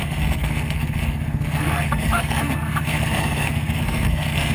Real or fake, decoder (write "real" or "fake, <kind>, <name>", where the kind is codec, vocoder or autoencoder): fake, codec, SNAC